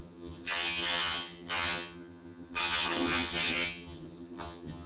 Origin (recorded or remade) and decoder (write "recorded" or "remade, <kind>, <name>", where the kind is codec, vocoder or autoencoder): remade, vocoder, HiFi-GAN